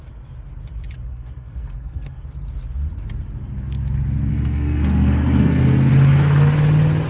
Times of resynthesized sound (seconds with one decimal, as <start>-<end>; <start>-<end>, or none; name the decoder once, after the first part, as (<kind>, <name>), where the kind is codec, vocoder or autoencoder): 1.1-2.2 (codec, SNAC); 4.3-5.9